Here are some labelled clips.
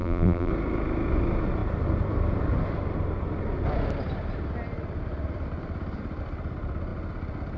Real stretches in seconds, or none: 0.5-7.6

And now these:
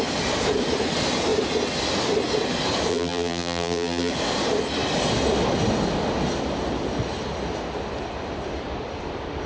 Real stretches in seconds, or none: 0.0-2.9; 4.1-9.5

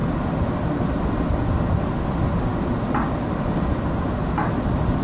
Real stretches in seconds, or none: 1.4-5.0

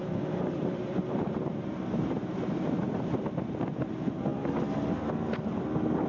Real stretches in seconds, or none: 3.7-6.1